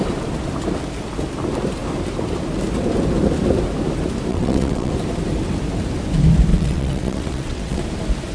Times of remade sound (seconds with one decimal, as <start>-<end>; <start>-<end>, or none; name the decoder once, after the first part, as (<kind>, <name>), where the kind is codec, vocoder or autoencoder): 4.3-4.9 (vocoder, WaveNeXt); 6.5-7.8